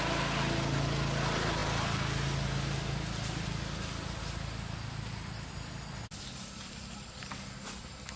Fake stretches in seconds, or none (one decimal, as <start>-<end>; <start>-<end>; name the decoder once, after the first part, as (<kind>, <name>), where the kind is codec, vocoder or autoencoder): none